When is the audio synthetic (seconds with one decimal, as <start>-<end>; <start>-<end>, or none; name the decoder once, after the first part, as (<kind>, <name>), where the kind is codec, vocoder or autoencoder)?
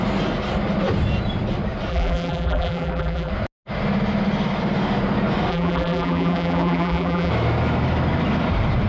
1.9-3.3 (vocoder, BigVGAN v2); 5.5-7.3